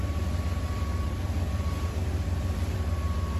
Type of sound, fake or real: fake